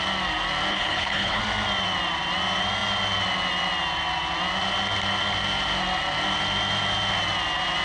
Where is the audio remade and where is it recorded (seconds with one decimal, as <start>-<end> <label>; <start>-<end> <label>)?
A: 0.0-0.7 recorded; 0.7-1.4 remade; 1.4-7.8 recorded